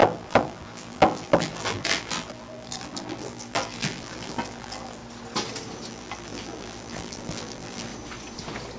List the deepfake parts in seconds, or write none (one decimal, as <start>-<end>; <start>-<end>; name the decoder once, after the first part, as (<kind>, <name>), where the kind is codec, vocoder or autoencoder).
0.0-5.0 (vocoder, BigVGAN v2); 5.9-7.9